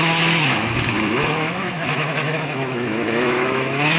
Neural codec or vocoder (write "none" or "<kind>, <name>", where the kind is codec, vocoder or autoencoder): autoencoder, DAC-VAE